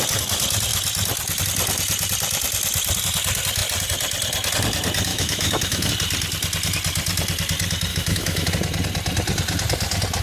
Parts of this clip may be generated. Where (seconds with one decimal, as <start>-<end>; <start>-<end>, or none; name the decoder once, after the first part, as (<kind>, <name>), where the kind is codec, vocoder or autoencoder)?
5.1-5.9 (autoencoder, DAC-VAE); 7.9-8.5